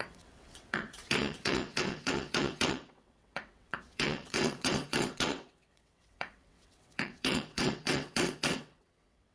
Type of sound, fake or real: fake